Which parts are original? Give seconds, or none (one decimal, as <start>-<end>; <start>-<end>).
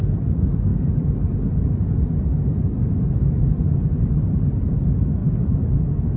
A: 0.0-6.2